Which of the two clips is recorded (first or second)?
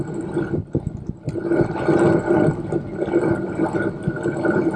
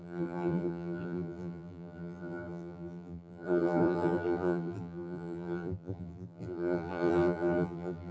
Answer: first